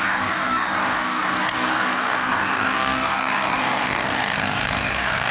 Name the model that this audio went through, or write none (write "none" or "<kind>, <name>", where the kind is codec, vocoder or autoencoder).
codec, DAC